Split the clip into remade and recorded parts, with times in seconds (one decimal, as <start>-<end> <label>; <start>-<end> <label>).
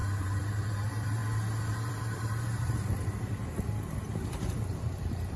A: 0.0-1.2 remade; 1.2-1.9 recorded; 1.9-5.4 remade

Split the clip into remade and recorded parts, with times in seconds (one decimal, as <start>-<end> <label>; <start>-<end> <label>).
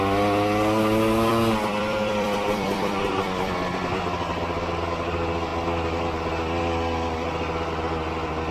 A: 0.0-1.3 recorded; 1.3-4.0 remade; 4.0-8.5 recorded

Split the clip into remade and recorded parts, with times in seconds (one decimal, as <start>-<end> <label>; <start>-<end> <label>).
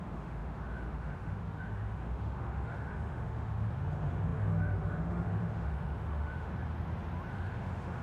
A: 0.0-6.5 remade; 6.5-7.3 recorded; 7.3-8.0 remade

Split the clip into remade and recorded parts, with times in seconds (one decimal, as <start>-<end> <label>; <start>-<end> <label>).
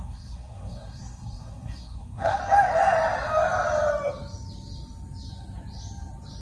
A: 0.0-2.4 remade; 2.4-6.4 recorded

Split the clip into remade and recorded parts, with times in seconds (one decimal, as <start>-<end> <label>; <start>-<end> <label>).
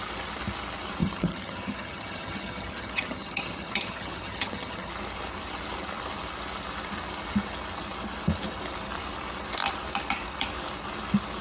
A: 0.0-1.0 recorded; 1.0-4.9 remade; 4.9-11.4 recorded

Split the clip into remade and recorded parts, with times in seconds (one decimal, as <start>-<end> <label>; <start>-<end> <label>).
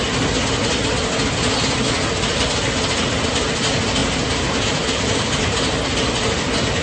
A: 0.0-4.0 recorded; 4.0-5.5 remade; 5.5-6.8 recorded